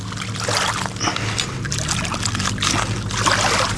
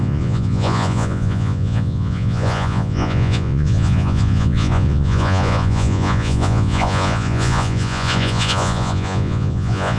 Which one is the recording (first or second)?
first